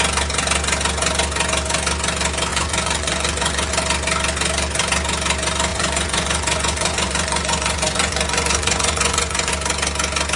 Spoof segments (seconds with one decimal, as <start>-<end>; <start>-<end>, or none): 2.5-3.7; 5.7-9.5